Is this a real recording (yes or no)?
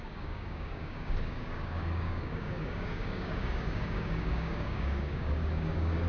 no